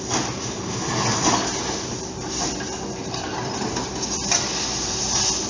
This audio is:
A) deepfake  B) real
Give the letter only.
B